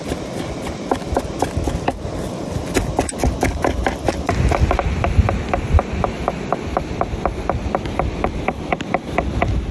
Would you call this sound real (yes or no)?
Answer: yes